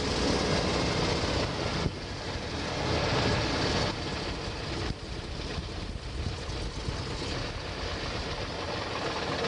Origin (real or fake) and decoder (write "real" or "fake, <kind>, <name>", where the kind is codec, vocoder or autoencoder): real